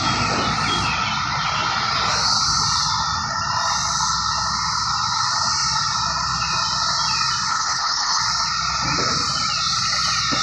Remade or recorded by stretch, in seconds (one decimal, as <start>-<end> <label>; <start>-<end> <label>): 0.0-7.5 recorded; 7.5-8.2 remade; 8.2-10.4 recorded